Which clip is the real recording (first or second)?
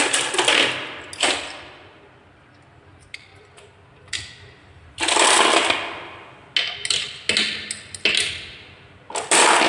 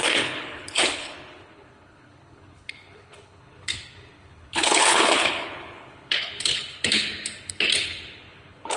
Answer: first